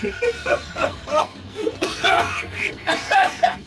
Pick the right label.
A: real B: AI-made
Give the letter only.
B